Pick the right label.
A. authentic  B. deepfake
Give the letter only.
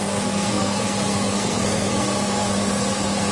B